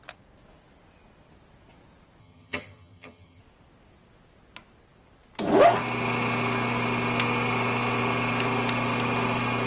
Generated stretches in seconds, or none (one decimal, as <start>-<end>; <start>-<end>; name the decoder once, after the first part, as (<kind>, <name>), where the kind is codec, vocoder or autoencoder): 2.2-3.4 (vocoder, HiFi-GAN)